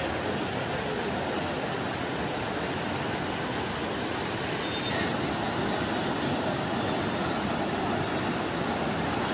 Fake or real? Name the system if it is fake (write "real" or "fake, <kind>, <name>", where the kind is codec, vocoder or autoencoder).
real